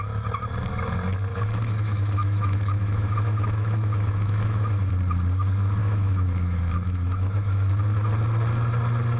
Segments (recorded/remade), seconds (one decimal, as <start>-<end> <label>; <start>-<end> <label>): 0.0-1.3 recorded; 1.3-4.9 remade; 4.9-5.8 recorded; 5.8-7.7 remade; 7.7-9.2 recorded

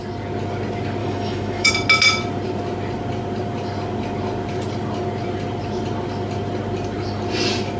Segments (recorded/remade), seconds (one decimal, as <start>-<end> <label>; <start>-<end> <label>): 0.0-1.0 recorded; 1.0-1.7 remade; 1.7-7.8 recorded

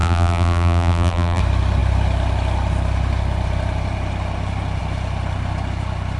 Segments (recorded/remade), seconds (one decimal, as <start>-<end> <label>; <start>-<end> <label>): 0.0-1.4 remade; 1.4-6.2 recorded

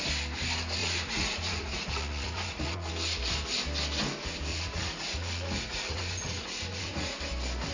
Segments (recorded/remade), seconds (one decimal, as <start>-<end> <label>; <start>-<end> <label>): 0.0-0.8 recorded; 0.8-2.9 remade; 2.9-4.5 recorded; 4.5-7.2 remade; 7.2-7.7 recorded

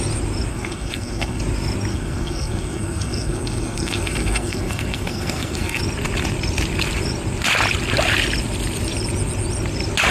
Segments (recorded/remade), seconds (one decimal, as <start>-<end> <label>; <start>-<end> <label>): 0.0-0.5 recorded; 0.5-1.4 remade; 1.4-1.9 recorded; 1.9-5.8 remade; 5.8-10.1 recorded

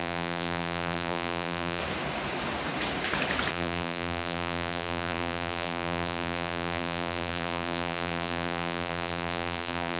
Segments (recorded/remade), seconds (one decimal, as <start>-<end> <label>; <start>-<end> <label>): 0.0-1.8 remade; 1.8-3.5 recorded; 3.5-10.0 remade

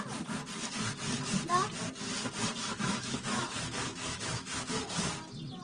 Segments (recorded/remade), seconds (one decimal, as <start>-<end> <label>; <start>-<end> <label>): 0.0-2.6 recorded; 2.6-4.8 remade; 4.8-5.6 recorded